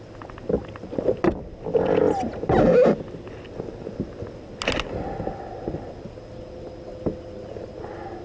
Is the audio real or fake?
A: real